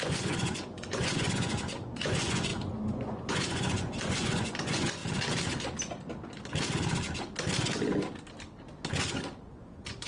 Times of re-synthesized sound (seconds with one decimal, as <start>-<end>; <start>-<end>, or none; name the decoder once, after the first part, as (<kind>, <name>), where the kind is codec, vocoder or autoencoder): 0.0-5.0 (vocoder, Vocos); 9.4-10.1